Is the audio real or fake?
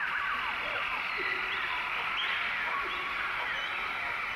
fake